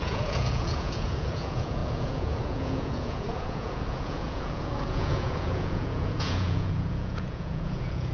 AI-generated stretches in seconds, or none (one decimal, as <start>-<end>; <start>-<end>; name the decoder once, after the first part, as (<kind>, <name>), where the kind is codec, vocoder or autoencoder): 0.0-8.1 (vocoder, Vocos)